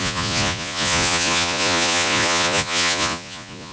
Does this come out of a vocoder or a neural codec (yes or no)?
yes